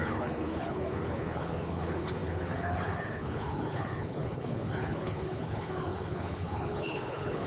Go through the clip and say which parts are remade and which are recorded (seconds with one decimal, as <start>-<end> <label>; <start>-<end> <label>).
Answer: 0.0-7.5 remade